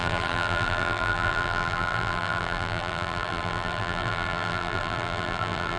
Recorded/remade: remade